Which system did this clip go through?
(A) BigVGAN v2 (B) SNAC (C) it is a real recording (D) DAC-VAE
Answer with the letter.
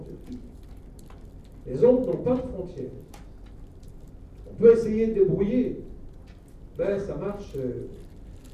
C